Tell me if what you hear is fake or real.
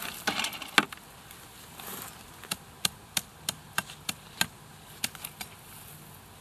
real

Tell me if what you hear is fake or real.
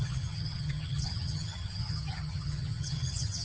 fake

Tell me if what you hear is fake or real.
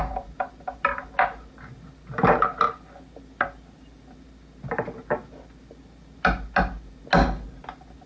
real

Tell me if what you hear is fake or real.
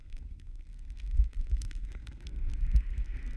fake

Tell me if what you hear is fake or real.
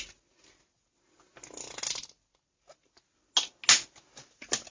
real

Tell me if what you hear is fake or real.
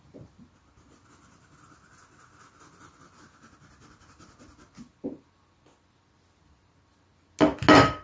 real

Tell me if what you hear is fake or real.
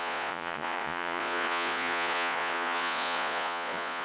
fake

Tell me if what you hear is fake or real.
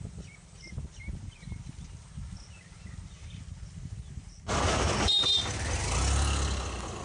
real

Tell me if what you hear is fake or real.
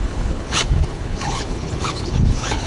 fake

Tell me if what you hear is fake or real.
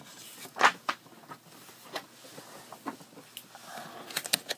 real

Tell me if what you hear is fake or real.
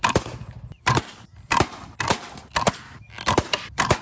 real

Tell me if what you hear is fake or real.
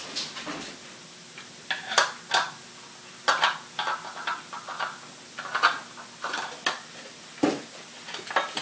real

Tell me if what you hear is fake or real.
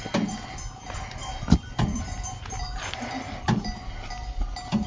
real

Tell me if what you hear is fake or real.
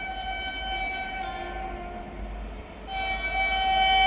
real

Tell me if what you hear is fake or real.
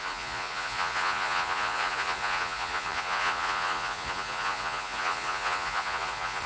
fake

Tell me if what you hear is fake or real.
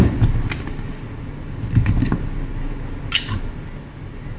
real